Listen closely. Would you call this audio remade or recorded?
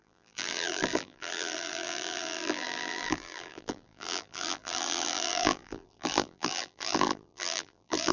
remade